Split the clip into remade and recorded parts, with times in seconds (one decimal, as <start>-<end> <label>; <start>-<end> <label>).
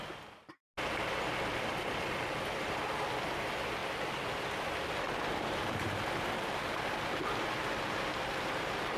0.0-9.0 recorded